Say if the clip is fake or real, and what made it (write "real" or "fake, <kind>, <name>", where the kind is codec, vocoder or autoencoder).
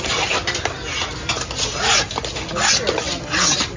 real